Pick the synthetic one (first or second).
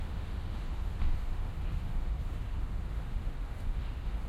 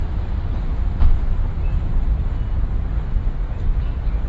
first